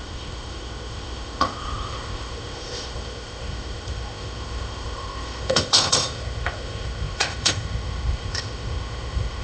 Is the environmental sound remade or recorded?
remade